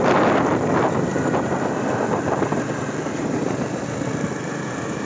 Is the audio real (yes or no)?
no